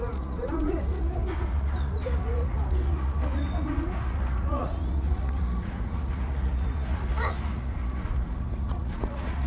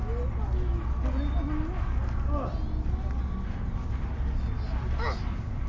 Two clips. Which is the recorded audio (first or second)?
second